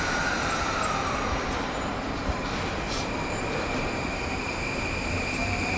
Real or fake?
fake